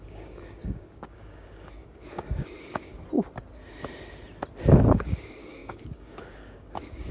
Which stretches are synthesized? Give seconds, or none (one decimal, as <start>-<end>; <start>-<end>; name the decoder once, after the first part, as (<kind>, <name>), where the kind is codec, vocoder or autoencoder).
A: 0.0-2.9 (codec, DAC); 4.9-7.1